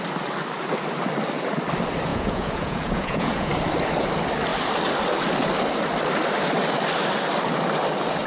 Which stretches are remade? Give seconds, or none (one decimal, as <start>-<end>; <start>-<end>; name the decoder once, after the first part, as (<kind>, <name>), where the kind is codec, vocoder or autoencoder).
2.1-3.5 (vocoder, Vocos)